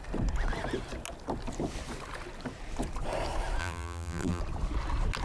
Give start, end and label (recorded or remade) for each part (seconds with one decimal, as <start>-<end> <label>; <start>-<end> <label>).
0.0-3.6 recorded; 3.6-4.4 remade; 4.4-5.2 recorded